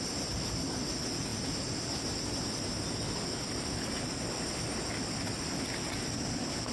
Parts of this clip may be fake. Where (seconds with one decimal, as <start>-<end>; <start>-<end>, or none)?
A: none